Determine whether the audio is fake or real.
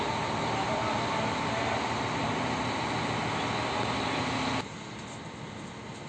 real